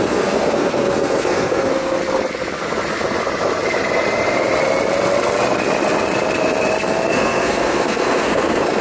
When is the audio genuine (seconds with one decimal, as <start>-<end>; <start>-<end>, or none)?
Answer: 2.0-7.1